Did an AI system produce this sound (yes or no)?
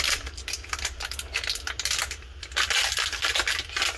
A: no